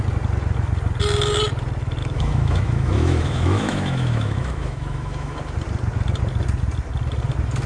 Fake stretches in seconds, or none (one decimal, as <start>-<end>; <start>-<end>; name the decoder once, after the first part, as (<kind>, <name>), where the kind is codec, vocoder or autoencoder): 2.0-5.4 (autoencoder, DAC-VAE)